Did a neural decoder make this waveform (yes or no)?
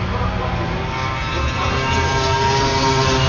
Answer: no